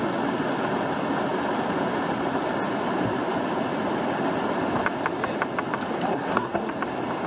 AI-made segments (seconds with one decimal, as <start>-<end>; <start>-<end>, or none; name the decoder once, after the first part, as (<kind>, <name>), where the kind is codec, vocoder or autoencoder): 6.1-6.7 (codec, SNAC)